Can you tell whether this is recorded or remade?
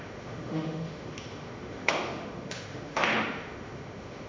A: remade